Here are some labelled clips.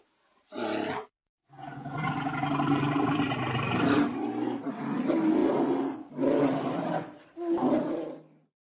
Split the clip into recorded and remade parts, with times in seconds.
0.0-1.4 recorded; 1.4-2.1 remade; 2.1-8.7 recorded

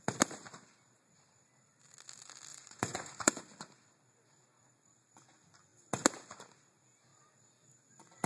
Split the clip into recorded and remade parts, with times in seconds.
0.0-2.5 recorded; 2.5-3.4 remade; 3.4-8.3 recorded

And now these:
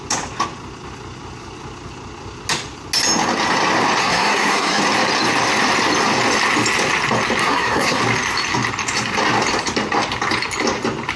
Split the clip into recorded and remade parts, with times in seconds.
0.0-4.0 recorded; 4.0-4.8 remade; 4.8-7.4 recorded; 7.4-8.0 remade; 8.0-11.2 recorded

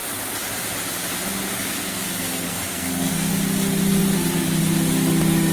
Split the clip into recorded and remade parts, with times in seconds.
0.0-1.5 recorded; 1.5-3.3 remade; 3.3-5.5 recorded

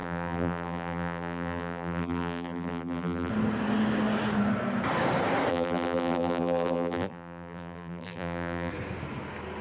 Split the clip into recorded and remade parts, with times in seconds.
0.0-3.3 remade; 3.3-5.5 recorded; 5.5-8.7 remade; 8.7-9.6 recorded

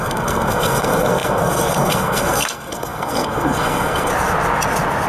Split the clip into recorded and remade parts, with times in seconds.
0.0-4.1 remade; 4.1-5.1 recorded

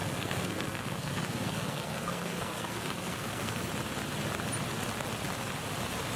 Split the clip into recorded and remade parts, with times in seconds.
0.0-3.7 remade; 3.7-6.2 recorded

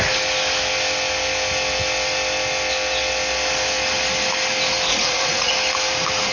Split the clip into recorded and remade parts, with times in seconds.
0.0-4.9 recorded; 4.9-5.5 remade; 5.5-6.3 recorded